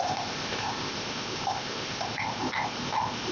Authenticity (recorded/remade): remade